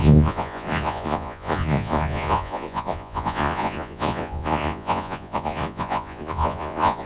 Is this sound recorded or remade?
remade